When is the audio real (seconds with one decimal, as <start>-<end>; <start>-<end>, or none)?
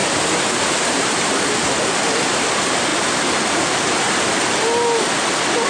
1.7-5.7